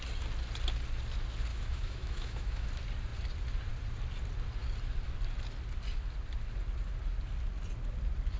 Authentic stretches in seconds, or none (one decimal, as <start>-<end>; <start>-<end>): 0.0-1.5; 2.7-8.4

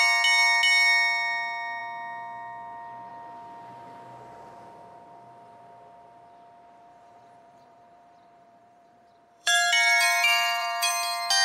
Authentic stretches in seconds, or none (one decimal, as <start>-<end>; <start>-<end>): 0.0-6.9; 10.9-11.4

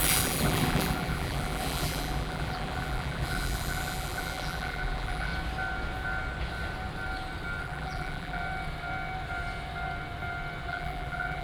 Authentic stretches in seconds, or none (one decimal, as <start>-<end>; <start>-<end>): 5.3-7.6; 8.4-10.7

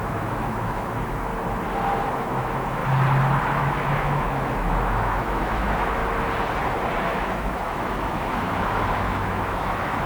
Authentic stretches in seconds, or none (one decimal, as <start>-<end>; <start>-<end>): 1.3-2.1; 2.8-3.4; 6.0-7.0

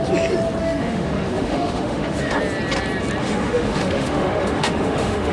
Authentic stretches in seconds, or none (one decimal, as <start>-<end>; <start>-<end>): 0.0-0.6; 2.4-3.2

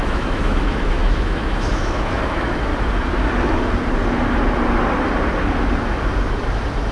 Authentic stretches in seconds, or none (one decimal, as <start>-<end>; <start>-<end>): 2.7-6.9

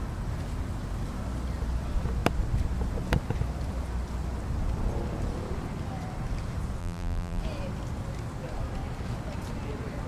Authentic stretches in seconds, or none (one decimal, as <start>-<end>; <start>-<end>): 0.0-6.8; 7.4-10.1

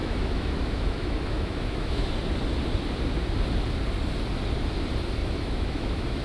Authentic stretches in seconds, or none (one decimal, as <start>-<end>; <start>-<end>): 2.1-5.2